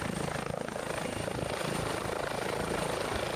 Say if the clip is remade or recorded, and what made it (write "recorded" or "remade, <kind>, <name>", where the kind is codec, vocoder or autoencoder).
recorded